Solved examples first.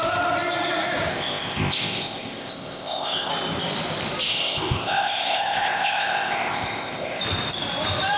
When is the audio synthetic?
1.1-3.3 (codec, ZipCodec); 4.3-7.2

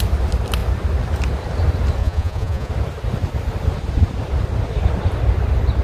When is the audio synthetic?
2.0-2.7 (vocoder, Vocos)

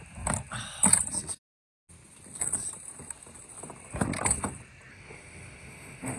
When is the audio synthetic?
4.9-6.2 (autoencoder, DAC-VAE)

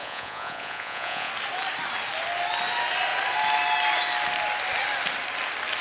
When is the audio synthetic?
0.0-1.3 (vocoder, Vocos)

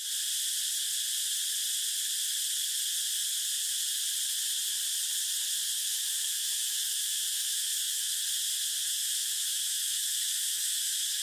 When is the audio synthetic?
5.8-8.2 (autoencoder, DAC-VAE); 8.9-11.2